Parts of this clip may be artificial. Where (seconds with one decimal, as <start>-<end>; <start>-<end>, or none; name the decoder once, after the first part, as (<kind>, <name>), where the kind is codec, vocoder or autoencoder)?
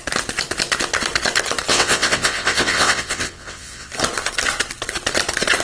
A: 1.7-3.9 (vocoder, WaveNeXt)